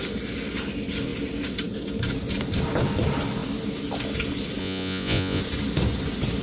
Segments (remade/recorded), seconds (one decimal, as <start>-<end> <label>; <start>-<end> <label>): 0.0-4.6 recorded; 4.6-5.4 remade; 5.4-6.4 recorded